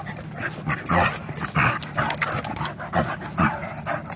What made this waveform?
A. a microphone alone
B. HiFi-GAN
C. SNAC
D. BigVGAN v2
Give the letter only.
A